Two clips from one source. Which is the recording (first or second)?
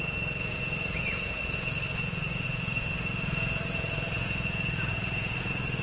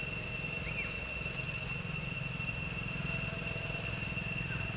second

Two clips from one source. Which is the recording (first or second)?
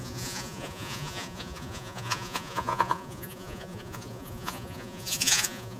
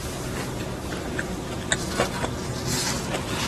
second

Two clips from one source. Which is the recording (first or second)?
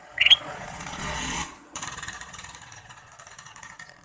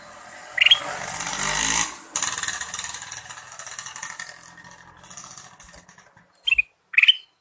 second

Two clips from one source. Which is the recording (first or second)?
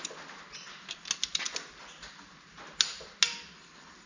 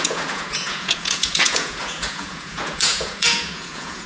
first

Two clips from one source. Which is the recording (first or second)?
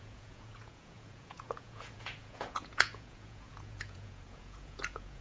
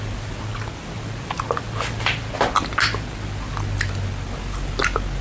second